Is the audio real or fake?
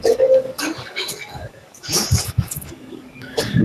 fake